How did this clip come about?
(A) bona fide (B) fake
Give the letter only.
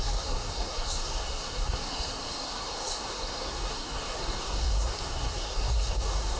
B